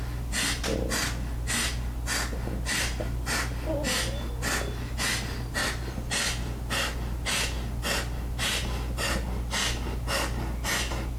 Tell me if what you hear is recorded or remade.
recorded